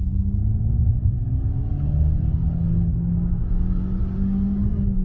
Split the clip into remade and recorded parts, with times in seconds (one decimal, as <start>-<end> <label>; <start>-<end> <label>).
0.0-5.0 recorded